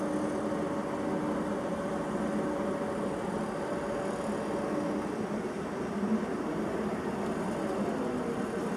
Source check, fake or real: real